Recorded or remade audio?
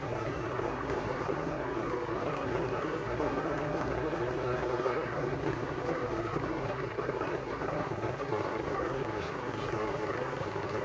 remade